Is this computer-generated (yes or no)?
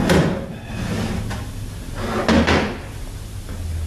no